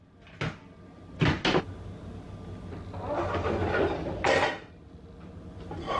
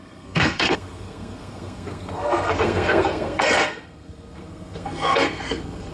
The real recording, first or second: first